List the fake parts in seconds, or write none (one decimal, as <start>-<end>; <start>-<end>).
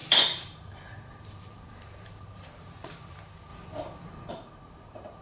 0.0-3.5; 4.3-5.2